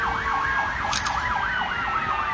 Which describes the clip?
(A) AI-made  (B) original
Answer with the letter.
B